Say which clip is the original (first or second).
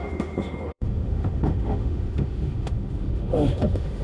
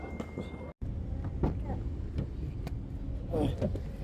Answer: second